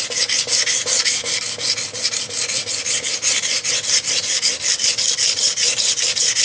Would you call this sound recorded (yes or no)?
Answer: yes